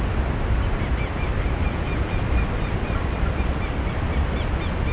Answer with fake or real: real